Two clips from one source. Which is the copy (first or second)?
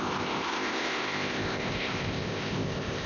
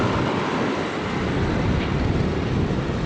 first